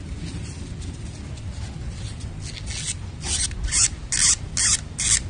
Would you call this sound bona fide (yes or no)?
yes